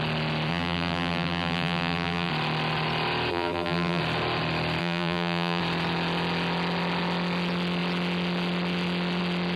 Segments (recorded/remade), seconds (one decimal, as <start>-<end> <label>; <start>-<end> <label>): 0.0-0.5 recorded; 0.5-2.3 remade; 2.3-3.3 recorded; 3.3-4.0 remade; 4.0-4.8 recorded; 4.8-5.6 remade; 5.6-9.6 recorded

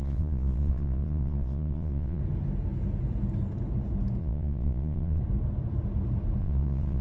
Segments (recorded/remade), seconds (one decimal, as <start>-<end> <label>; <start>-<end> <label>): 0.0-2.2 remade; 2.2-4.2 recorded; 4.2-5.2 remade; 5.2-6.4 recorded; 6.4-7.0 remade

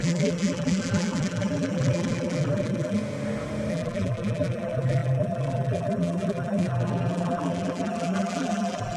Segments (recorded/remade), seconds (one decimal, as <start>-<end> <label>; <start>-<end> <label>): 0.0-3.0 remade; 3.0-3.7 recorded; 3.7-9.0 remade